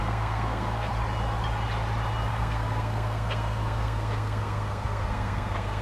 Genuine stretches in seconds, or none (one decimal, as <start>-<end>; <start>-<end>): 0.9-2.3